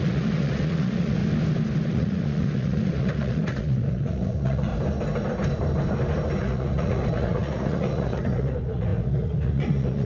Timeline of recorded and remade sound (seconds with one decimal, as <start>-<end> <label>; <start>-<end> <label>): 0.0-1.2 remade; 1.2-1.9 recorded; 1.9-4.7 remade; 4.7-6.4 recorded; 6.4-10.0 remade